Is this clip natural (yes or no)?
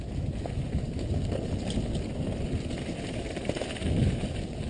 yes